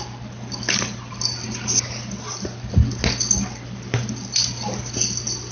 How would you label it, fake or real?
real